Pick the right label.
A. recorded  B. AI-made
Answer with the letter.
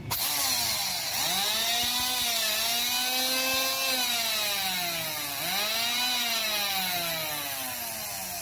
A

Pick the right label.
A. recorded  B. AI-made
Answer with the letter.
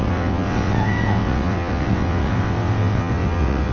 B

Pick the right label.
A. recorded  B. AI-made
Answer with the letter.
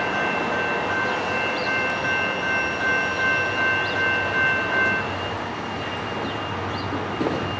A